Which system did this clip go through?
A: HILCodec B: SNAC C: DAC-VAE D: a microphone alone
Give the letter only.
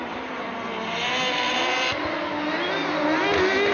D